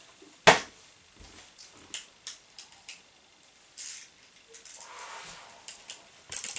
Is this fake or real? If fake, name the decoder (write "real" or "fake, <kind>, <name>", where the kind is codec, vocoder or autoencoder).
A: real